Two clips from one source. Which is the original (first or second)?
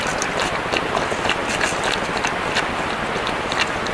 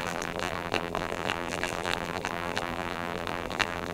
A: first